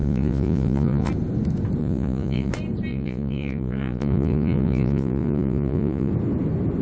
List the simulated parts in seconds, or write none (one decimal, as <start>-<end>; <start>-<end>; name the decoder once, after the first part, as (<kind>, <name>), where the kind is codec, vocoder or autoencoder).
0.0-1.1 (vocoder, Vocos); 1.8-2.5; 2.9-6.1